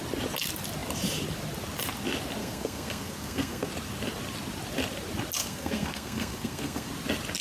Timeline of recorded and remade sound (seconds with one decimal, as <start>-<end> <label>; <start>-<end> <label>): 0.0-2.4 recorded; 2.4-3.7 remade; 3.7-5.4 recorded; 5.4-6.9 remade; 6.9-7.4 recorded